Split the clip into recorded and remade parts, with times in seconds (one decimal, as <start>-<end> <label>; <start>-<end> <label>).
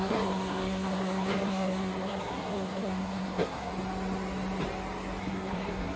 0.0-3.7 remade; 3.7-5.2 recorded; 5.2-6.0 remade